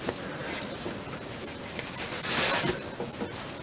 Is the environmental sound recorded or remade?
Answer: recorded